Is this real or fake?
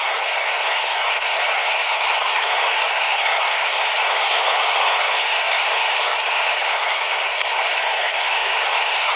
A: fake